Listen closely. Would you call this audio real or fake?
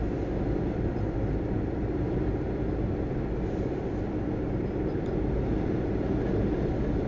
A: real